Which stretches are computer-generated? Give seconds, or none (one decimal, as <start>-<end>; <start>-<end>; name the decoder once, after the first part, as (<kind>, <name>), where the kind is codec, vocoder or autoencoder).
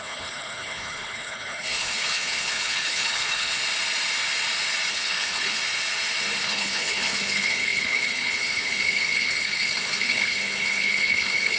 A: 0.0-3.6 (codec, HILCodec); 4.9-5.6; 6.4-11.6